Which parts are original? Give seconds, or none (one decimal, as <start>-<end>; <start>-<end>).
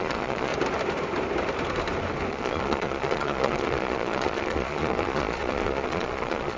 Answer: 0.5-2.3